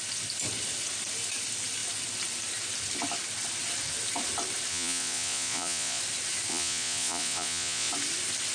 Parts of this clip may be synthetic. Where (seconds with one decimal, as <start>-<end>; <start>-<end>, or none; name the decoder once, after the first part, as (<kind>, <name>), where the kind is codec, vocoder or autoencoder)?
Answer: 4.7-6.0 (vocoder, Vocos); 6.5-7.9